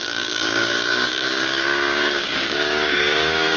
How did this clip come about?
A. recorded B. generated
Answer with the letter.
B